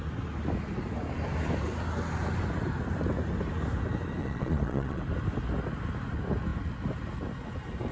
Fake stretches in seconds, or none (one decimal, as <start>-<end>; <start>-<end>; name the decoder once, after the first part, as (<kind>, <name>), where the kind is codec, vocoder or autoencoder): 4.2-5.0 (vocoder, Vocos)